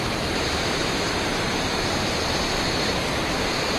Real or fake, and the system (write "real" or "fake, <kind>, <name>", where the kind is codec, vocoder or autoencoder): fake, vocoder, BigVGAN v2